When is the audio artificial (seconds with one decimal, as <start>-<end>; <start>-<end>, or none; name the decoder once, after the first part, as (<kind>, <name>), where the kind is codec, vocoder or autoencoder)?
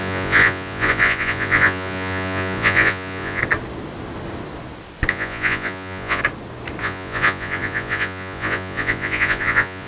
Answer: 0.0-3.4 (vocoder, Vocos); 5.1-6.2; 6.8-9.9